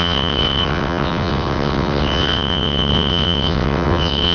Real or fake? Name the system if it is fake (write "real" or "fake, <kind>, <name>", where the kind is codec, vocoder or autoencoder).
fake, vocoder, WaveNeXt